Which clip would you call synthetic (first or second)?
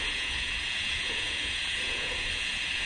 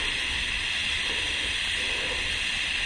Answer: first